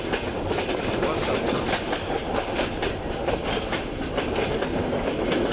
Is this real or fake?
real